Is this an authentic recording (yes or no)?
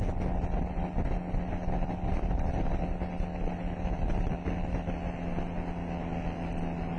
yes